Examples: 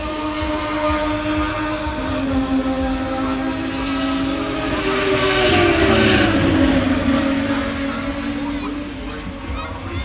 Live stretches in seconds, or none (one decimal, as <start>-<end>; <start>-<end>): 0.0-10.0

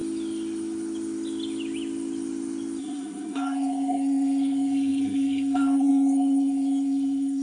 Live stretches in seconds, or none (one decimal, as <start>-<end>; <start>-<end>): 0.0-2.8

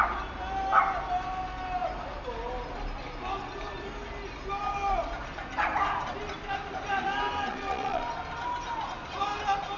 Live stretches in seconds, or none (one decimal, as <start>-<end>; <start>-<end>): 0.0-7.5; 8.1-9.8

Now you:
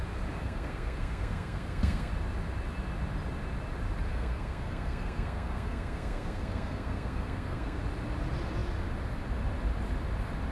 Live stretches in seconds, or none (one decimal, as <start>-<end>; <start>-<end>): 0.0-0.4; 2.1-4.1; 7.8-10.5

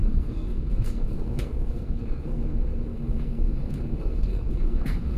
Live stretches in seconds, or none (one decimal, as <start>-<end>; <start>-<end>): none

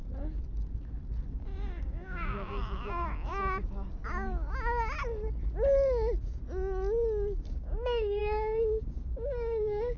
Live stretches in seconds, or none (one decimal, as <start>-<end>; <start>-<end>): 0.0-1.3; 3.3-7.5

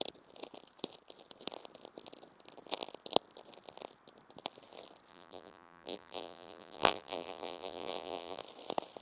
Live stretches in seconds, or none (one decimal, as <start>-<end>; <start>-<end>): 0.0-5.1; 8.4-9.0